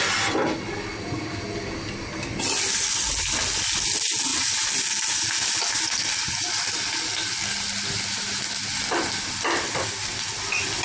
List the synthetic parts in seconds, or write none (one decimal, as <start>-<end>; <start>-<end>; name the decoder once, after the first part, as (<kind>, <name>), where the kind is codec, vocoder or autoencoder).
none